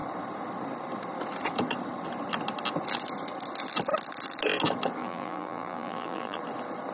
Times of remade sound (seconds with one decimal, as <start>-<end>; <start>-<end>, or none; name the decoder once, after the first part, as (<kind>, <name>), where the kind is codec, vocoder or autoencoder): 5.0-6.4 (vocoder, BigVGAN v2)